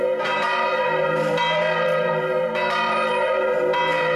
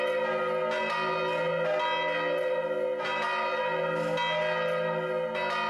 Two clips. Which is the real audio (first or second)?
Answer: second